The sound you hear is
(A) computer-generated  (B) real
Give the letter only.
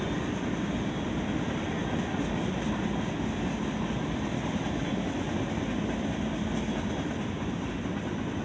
B